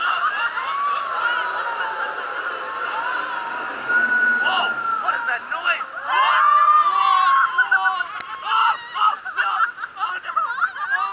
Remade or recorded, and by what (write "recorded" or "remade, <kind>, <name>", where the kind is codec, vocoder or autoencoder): recorded